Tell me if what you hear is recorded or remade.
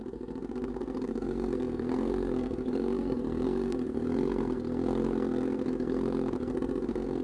remade